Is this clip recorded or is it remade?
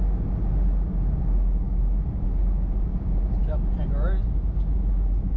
recorded